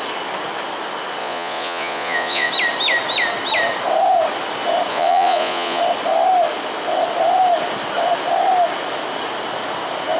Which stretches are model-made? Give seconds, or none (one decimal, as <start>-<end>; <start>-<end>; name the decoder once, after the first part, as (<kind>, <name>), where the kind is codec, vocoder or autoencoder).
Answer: 1.2-2.5 (vocoder, Vocos); 4.9-5.8